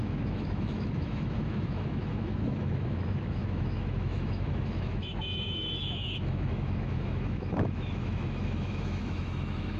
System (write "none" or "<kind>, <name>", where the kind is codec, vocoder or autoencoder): autoencoder, DAC-VAE